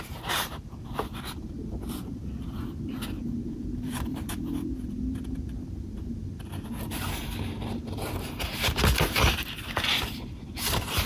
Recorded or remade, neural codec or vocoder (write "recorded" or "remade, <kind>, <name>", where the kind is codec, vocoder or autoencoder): remade, vocoder, BigVGAN v2